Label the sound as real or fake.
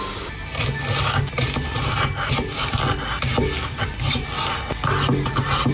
real